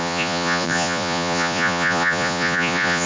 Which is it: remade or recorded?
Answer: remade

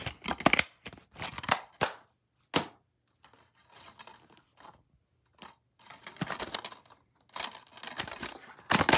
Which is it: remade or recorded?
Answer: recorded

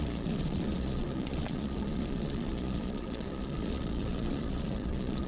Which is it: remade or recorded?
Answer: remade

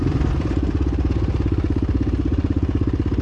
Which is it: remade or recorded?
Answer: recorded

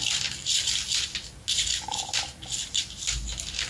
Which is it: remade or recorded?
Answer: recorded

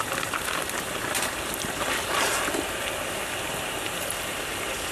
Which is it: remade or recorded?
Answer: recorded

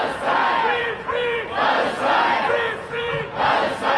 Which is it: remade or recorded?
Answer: remade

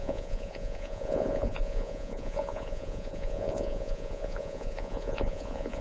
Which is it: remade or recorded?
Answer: remade